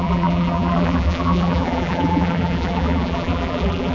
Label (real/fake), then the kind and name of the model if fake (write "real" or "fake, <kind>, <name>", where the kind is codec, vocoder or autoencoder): fake, vocoder, BigVGAN v2